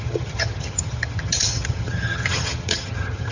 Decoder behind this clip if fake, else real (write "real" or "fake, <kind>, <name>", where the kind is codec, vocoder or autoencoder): fake, vocoder, HiFi-GAN